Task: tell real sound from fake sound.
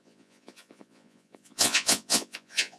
fake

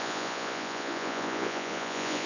fake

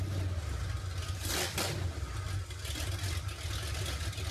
real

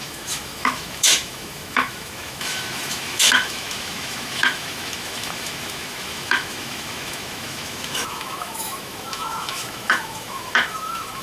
fake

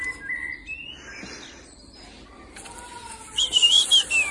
real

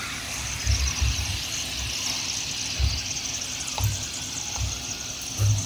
real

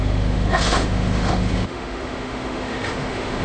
fake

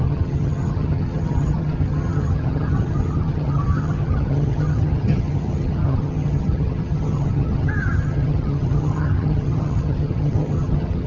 fake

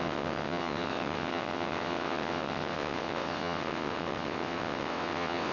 fake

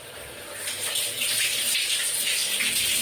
real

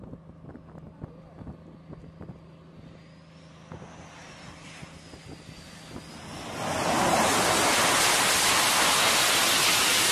real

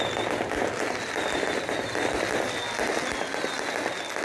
real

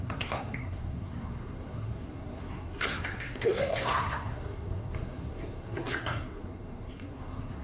fake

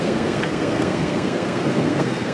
fake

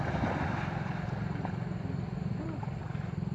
real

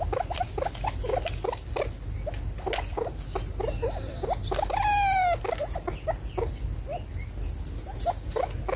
real